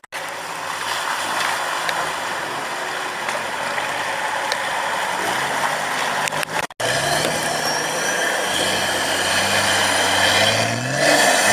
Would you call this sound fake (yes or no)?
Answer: no